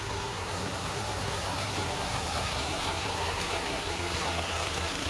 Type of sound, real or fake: fake